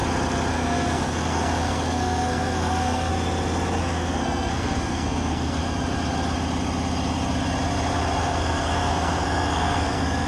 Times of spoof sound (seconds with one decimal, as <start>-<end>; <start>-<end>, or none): 0.5-3.1; 3.8-5.6; 8.2-10.3